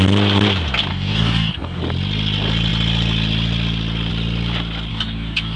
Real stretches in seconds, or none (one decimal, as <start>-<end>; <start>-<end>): 0.0-0.9; 1.8-4.9